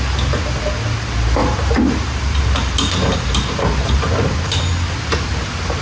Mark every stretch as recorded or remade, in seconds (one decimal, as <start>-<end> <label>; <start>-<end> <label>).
0.0-1.4 recorded; 1.4-4.6 remade; 4.6-5.8 recorded